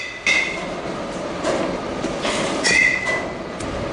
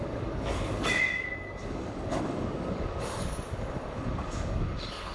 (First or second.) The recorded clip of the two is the first